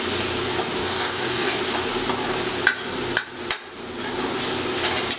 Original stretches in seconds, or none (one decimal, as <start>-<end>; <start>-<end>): 0.0-0.8; 1.6-5.2